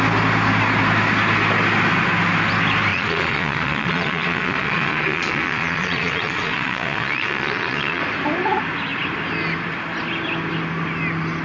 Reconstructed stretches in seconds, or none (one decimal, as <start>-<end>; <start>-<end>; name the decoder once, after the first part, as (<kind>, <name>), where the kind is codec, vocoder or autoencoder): 2.9-8.0 (vocoder, Vocos)